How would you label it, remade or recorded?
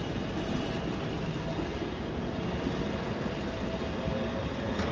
recorded